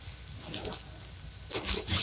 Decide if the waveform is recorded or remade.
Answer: recorded